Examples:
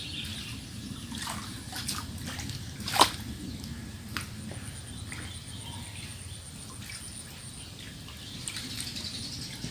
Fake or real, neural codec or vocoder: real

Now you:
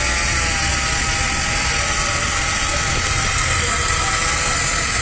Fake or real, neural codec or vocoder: real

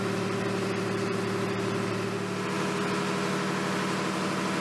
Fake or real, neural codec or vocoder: real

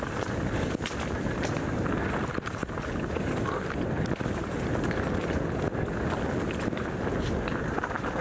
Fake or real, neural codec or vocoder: real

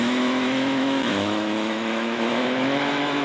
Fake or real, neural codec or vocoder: fake, autoencoder, DAC-VAE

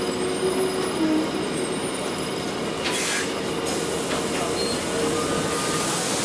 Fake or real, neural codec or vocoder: real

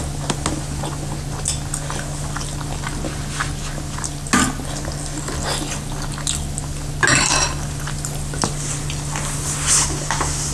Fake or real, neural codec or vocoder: real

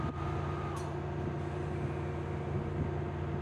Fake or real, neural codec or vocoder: real